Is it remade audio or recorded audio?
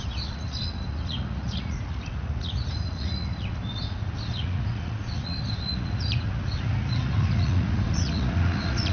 remade